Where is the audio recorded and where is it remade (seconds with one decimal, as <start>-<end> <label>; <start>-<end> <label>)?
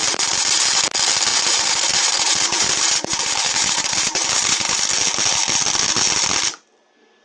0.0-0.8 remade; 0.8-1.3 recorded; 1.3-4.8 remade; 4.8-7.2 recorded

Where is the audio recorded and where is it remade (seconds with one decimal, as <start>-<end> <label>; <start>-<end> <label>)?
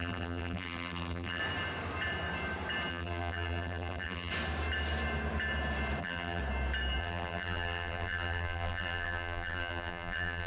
0.0-1.4 remade; 1.4-2.9 recorded; 2.9-4.3 remade; 4.3-6.0 recorded; 6.0-6.4 remade; 6.4-7.0 recorded; 7.0-10.5 remade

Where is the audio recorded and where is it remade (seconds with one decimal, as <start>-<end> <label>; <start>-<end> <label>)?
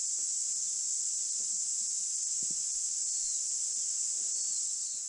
0.0-5.1 recorded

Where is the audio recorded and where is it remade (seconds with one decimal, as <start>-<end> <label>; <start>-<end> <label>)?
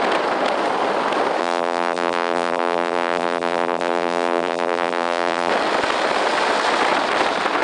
0.0-1.4 recorded; 1.4-5.5 remade; 5.5-7.6 recorded